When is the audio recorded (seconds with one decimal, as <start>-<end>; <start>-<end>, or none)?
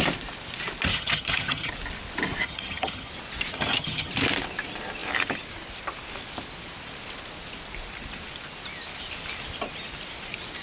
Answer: 0.0-0.9; 1.7-2.4; 3.1-3.5; 4.1-10.6